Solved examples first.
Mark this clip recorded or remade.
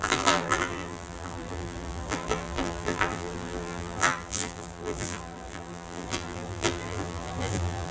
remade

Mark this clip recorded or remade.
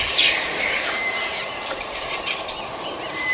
remade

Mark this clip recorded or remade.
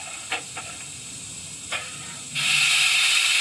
remade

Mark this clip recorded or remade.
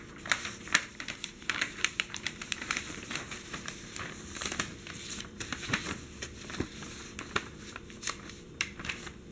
remade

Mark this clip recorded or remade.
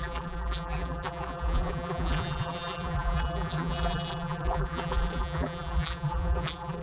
remade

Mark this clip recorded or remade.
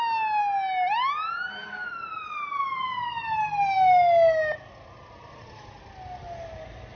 recorded